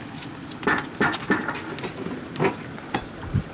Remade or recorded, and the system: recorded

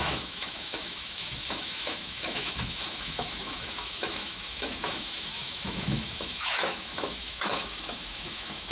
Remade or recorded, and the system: remade, autoencoder, DAC-VAE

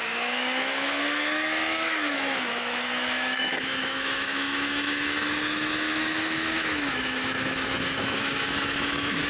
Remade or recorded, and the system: remade, autoencoder, DAC-VAE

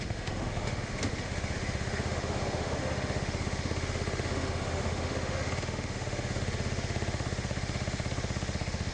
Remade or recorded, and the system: remade, autoencoder, DAC-VAE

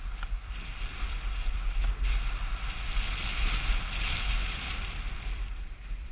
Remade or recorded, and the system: recorded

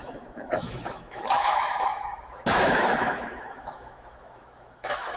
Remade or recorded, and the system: remade, autoencoder, DAC-VAE